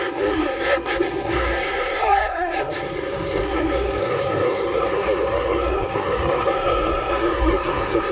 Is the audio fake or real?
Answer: fake